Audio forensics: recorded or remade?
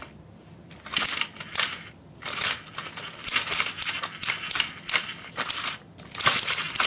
recorded